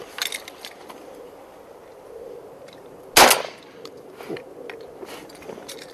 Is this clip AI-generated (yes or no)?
no